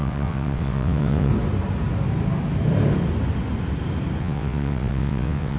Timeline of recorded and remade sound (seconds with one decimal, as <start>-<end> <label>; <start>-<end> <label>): 0.0-1.3 remade; 1.3-4.2 recorded; 4.2-5.6 remade

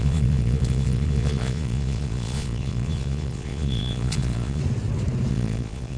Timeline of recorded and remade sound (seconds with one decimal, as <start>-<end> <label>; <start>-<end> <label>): 0.0-4.6 remade; 4.6-5.3 recorded; 5.3-6.0 remade